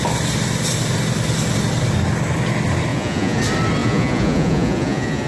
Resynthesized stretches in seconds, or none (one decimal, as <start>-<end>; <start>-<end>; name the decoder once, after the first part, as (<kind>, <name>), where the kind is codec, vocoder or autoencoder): 2.9-3.4 (vocoder, Vocos); 3.8-5.3